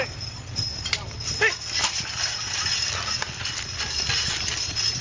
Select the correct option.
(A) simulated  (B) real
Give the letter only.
B